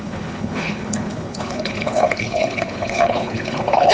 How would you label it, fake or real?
fake